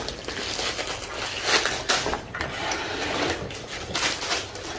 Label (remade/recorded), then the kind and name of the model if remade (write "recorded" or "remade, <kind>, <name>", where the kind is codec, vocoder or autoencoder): recorded